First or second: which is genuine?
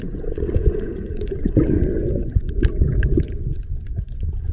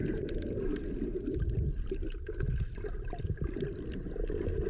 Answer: second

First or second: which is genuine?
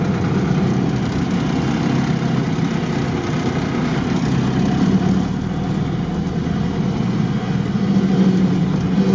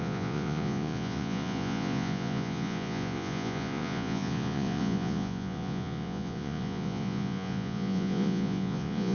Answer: first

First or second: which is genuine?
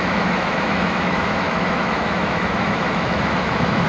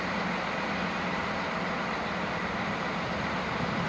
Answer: second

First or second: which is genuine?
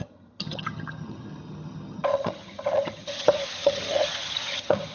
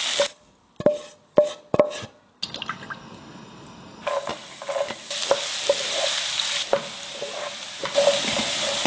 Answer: second